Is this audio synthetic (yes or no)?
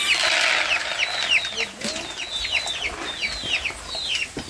no